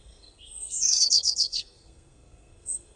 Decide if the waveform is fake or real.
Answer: fake